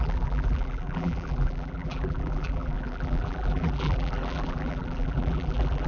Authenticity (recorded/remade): remade